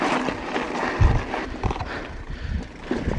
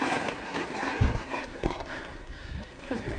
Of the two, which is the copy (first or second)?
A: second